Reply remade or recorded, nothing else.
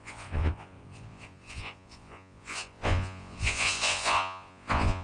remade